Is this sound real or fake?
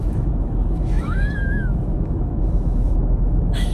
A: fake